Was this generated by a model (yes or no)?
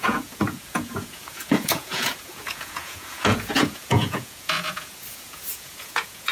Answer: yes